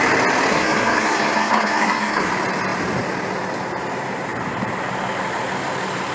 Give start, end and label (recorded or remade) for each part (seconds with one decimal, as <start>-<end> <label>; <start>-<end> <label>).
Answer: 0.0-0.5 recorded; 0.5-2.3 remade; 2.3-6.1 recorded